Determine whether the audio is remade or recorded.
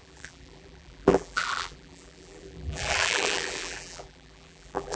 remade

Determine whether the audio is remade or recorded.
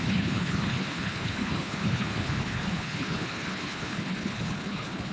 remade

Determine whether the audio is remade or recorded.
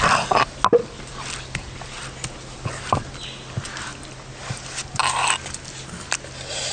recorded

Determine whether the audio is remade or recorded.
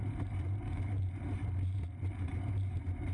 remade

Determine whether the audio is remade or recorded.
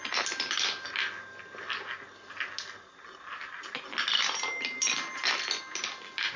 recorded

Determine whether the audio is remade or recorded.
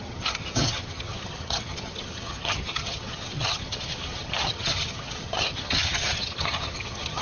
remade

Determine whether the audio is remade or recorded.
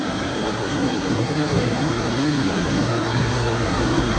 remade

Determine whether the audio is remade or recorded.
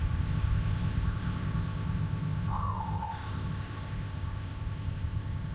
remade